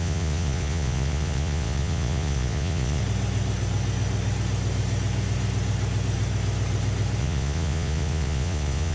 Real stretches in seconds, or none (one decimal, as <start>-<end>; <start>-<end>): 3.0-7.2